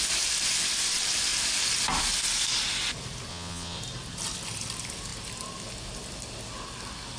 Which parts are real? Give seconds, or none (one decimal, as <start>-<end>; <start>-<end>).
0.0-3.3; 3.8-7.2